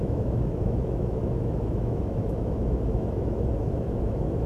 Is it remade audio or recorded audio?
remade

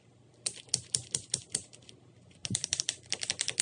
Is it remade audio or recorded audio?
recorded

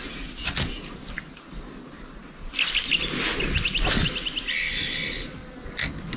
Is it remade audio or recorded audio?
recorded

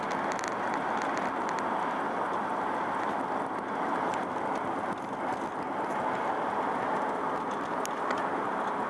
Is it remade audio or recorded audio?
recorded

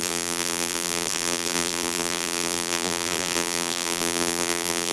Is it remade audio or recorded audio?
remade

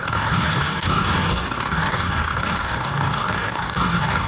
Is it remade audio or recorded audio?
remade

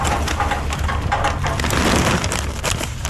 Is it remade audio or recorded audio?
recorded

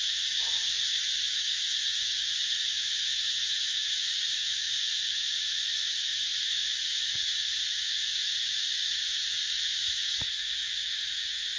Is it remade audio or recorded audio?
remade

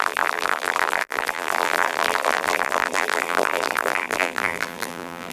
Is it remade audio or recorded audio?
remade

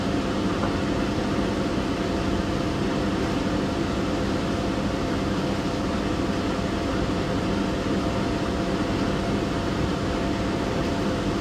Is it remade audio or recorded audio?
recorded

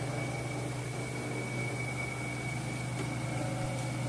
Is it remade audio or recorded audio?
recorded